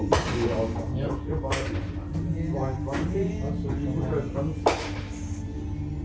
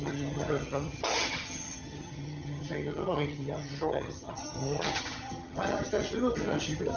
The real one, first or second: first